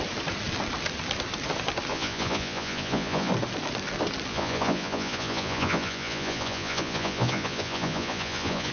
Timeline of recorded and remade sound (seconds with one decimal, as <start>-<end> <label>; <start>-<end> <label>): 0.0-1.9 recorded; 1.9-3.3 remade; 3.3-4.3 recorded; 4.3-8.7 remade